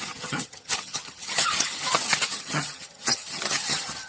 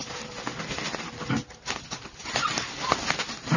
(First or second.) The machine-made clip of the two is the first